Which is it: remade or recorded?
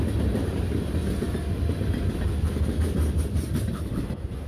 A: recorded